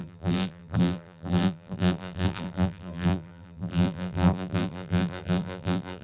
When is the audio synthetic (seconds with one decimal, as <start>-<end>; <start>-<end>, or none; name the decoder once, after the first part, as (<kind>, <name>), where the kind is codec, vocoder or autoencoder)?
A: 0.0-6.0 (vocoder, BigVGAN v2)

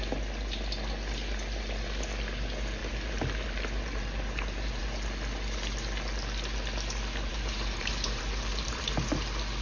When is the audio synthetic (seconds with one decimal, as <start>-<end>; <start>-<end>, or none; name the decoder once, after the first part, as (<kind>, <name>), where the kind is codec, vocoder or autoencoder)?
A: 2.8-4.8 (vocoder, BigVGAN v2); 7.3-8.9